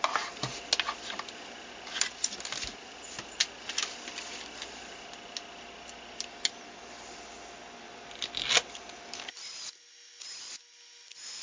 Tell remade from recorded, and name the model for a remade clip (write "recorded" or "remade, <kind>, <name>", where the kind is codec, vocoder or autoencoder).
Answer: recorded